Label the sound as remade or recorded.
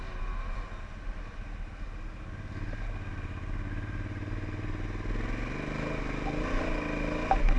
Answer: recorded